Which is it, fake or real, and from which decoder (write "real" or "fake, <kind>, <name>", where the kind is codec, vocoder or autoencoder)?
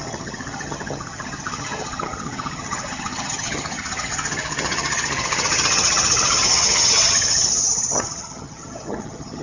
fake, vocoder, HiFi-GAN